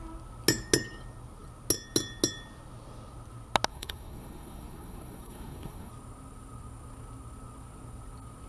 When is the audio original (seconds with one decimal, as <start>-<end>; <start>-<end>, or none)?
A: 0.0-3.7; 5.9-8.5